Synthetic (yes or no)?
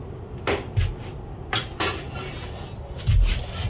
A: no